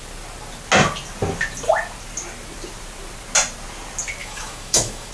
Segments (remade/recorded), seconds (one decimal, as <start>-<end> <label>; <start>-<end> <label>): 0.0-4.2 recorded; 4.2-5.1 remade